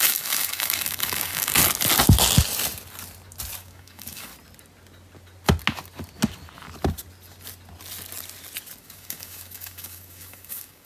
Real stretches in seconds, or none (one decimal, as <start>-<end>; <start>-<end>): 1.6-3.6; 4.3-8.8